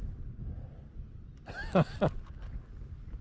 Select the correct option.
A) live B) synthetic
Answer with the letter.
A